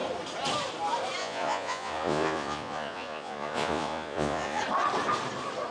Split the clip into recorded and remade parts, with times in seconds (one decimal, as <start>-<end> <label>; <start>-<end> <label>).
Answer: 0.0-1.2 recorded; 1.2-4.6 remade; 4.6-5.7 recorded